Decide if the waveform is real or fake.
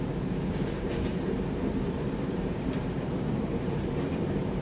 fake